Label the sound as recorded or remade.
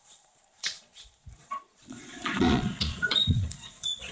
remade